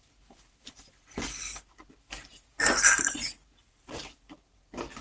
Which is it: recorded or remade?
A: recorded